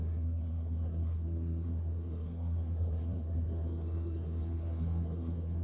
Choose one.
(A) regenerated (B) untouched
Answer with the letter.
A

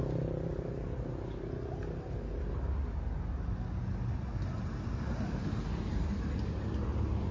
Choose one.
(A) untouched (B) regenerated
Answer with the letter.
A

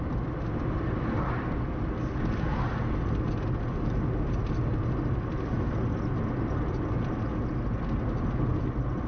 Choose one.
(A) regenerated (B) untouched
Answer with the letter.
B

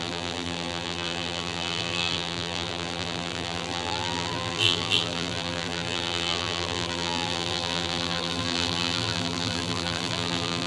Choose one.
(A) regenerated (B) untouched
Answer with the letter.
A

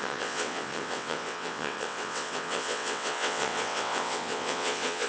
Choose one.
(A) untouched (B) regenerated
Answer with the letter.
B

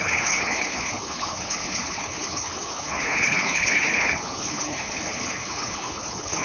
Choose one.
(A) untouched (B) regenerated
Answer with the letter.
B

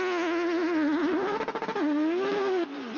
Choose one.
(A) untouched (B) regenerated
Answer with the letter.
A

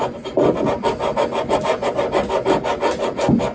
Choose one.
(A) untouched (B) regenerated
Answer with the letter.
A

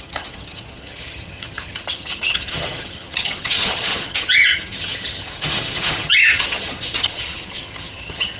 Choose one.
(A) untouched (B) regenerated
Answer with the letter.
B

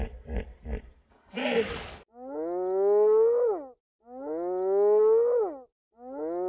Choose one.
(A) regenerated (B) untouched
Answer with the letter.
B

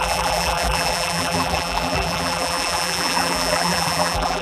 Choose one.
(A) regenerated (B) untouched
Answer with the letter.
A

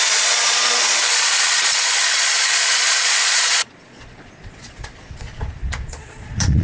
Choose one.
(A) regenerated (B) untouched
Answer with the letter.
A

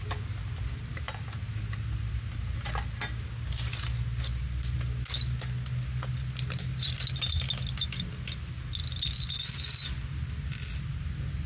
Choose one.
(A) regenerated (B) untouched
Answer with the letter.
B